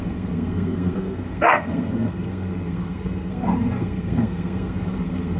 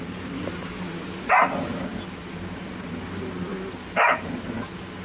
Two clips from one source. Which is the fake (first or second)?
first